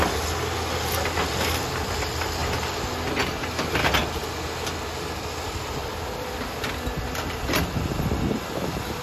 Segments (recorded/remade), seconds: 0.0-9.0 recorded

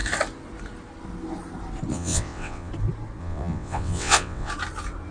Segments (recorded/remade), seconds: 0.0-1.9 recorded; 1.9-2.7 remade; 2.7-3.2 recorded; 3.2-4.5 remade; 4.5-5.1 recorded

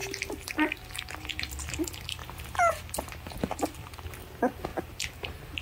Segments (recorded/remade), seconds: 0.0-5.6 recorded